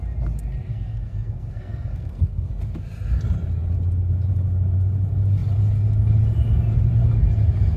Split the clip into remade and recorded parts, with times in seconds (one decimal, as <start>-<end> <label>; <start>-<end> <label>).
0.0-0.7 recorded; 0.7-2.5 remade; 2.5-7.8 recorded